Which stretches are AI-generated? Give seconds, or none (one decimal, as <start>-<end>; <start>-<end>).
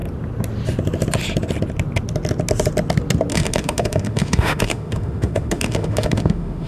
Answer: 3.3-6.7